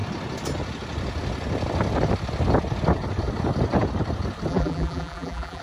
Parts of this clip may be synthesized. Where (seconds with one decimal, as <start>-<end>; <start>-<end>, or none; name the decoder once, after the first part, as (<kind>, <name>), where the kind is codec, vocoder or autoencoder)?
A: 4.5-5.6 (vocoder, BigVGAN v2)